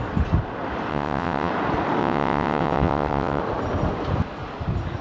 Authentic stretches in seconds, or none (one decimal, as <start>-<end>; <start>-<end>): 0.0-0.9; 1.5-2.0; 3.4-5.0